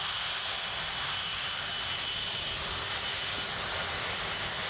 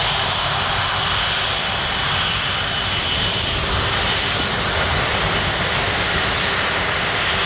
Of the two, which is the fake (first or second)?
second